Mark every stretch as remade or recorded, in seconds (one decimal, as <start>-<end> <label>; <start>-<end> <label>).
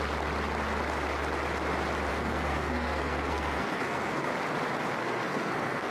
0.0-2.1 recorded; 2.1-4.3 remade; 4.3-5.0 recorded; 5.0-5.9 remade